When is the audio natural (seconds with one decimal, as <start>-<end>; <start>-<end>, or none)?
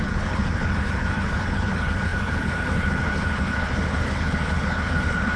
none